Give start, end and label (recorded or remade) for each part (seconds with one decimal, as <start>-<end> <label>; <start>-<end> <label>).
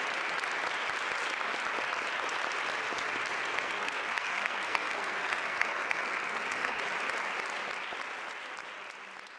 0.0-3.5 recorded; 3.5-6.8 remade; 6.8-9.4 recorded